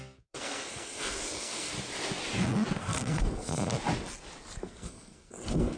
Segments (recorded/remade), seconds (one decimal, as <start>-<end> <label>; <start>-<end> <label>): 0.0-1.7 remade; 1.7-2.8 recorded; 2.8-3.7 remade; 3.7-4.6 recorded; 4.6-5.8 remade